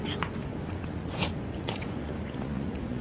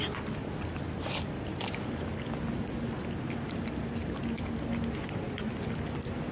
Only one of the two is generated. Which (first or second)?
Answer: first